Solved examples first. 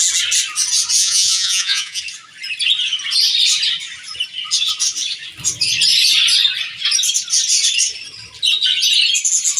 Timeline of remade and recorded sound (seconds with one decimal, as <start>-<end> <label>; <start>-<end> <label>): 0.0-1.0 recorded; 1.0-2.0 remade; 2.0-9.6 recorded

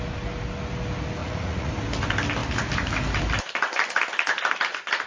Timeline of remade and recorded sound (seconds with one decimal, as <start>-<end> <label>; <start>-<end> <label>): 0.0-1.2 recorded; 1.2-1.7 remade; 1.7-5.1 recorded

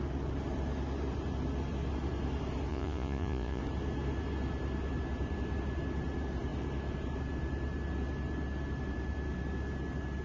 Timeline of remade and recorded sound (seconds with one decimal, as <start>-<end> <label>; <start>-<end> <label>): 0.0-2.7 recorded; 2.7-3.6 remade; 3.6-10.2 recorded

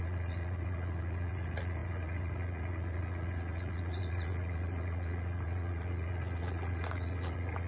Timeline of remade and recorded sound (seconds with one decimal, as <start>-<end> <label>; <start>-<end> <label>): 0.0-7.7 remade